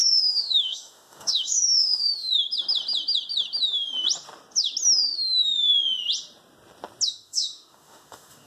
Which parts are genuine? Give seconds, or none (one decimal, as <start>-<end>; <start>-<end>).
2.1-7.1